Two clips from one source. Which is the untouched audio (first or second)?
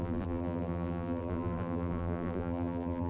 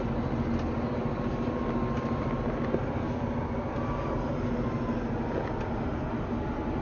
second